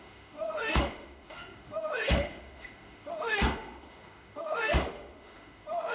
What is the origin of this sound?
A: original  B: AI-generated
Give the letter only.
B